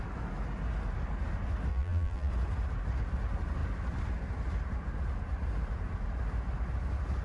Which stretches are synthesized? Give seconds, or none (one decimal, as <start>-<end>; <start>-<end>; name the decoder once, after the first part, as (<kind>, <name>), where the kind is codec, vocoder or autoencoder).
1.7-2.3 (vocoder, BigVGAN v2)